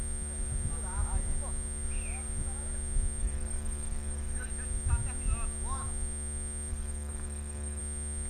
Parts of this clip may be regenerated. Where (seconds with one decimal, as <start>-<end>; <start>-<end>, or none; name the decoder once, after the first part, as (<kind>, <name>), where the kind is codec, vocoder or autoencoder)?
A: 3.2-4.5 (codec, DAC); 6.7-7.8